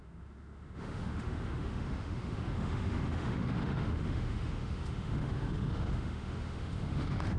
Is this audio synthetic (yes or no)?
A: yes